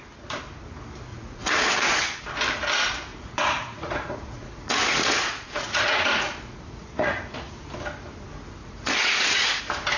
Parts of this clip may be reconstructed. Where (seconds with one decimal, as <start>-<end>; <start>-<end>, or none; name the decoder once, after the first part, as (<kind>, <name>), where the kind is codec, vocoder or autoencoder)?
1.1-2.2 (vocoder, Vocos); 3.1-7.2; 8.6-9.6